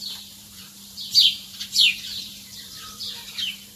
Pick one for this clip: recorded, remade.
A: remade